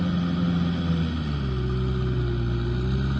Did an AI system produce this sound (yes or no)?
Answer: no